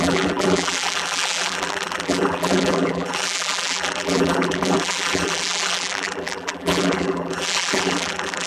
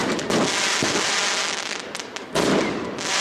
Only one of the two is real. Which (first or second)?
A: second